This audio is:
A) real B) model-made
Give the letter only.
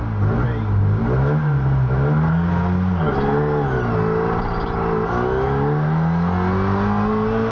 A